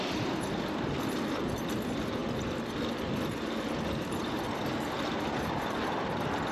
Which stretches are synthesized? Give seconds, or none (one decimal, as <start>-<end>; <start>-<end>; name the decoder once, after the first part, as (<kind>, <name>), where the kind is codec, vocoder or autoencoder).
none